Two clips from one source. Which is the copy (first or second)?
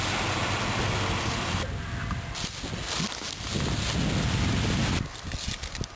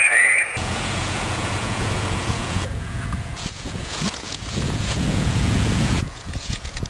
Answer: second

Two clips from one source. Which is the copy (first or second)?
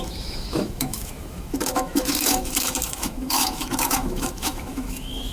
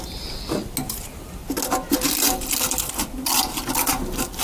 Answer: first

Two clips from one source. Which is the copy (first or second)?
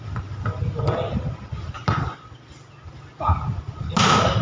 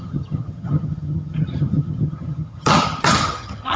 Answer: second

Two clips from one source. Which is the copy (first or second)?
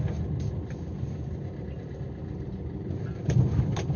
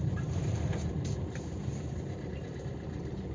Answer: second